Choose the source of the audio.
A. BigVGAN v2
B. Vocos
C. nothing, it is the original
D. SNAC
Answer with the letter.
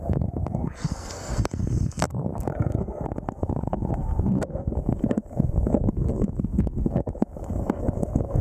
D